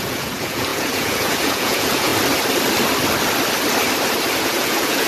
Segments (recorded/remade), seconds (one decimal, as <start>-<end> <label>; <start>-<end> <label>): 0.0-2.1 remade; 2.1-4.4 recorded; 4.4-5.1 remade